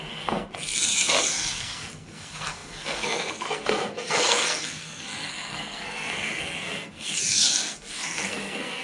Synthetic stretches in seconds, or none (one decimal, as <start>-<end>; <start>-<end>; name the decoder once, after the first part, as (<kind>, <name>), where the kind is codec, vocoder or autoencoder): 0.0-8.8 (codec, SNAC)